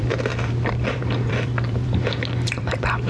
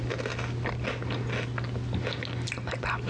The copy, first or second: first